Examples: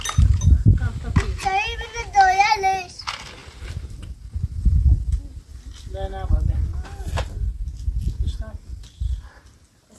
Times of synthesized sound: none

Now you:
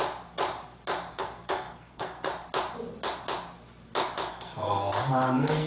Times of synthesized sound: 1.1-2.3 (codec, SNAC); 4.3-5.7

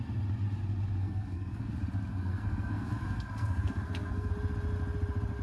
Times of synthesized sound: 1.0-1.7 (codec, SNAC); 2.1-4.3

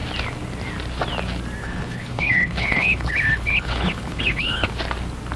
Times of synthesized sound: 1.6-4.7 (codec, HILCodec)

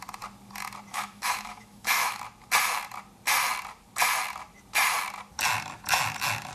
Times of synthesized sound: 0.9-2.2 (autoencoder, DAC-VAE)

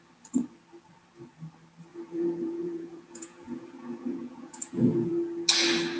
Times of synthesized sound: 1.9-5.1 (vocoder, Vocos)